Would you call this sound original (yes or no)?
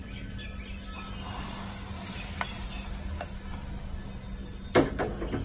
yes